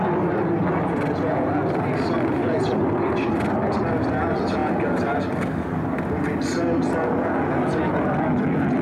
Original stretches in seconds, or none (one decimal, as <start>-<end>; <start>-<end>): 0.0-8.8